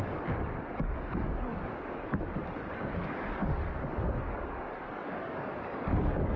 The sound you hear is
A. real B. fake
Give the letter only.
B